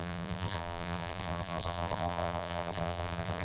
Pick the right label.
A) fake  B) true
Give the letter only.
A